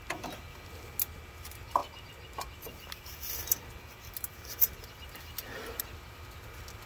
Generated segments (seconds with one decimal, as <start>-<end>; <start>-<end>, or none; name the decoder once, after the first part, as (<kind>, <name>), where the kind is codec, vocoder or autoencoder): none